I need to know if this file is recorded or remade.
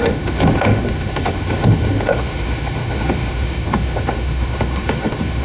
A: remade